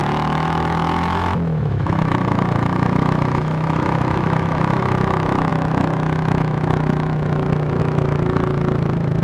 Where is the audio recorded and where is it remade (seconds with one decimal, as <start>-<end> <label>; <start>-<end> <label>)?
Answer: 0.0-9.2 remade